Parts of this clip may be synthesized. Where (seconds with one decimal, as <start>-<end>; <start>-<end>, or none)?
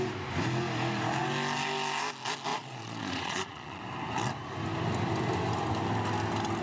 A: 2.5-3.8